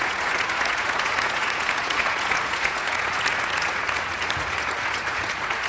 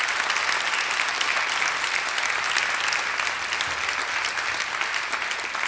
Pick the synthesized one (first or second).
first